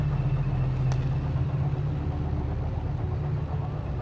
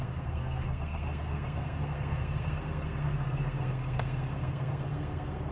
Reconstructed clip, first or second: second